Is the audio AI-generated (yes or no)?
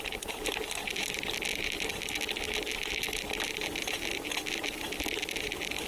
no